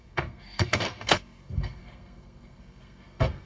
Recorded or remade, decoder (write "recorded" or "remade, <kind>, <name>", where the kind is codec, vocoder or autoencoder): remade, codec, SNAC